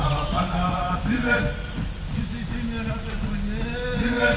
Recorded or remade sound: recorded